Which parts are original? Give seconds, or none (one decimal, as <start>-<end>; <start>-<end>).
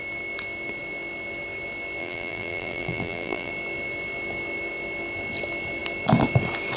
0.0-2.0; 3.5-6.8